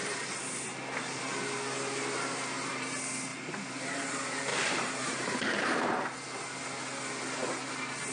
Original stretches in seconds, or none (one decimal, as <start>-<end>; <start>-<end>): 0.0-3.3; 4.1-4.5; 5.6-8.1